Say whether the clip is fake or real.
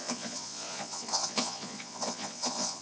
fake